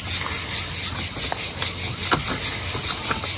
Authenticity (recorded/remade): recorded